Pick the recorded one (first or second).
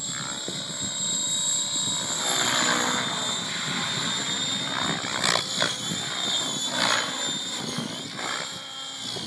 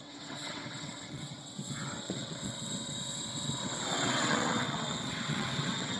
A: first